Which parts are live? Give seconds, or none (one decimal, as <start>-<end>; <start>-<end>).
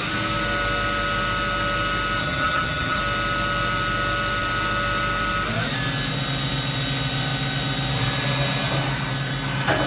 0.0-2.2; 3.0-9.9